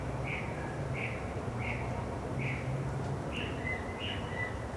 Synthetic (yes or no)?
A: no